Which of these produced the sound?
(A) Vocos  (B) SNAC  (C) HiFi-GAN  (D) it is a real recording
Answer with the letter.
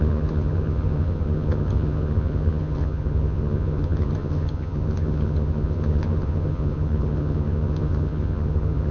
C